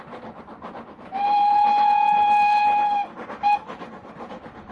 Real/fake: real